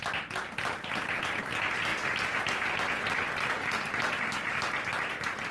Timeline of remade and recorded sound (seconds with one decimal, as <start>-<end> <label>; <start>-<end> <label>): 0.0-5.5 recorded